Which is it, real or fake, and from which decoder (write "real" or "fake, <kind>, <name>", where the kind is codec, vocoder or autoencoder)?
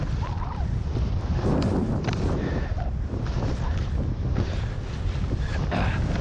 fake, vocoder, BigVGAN v2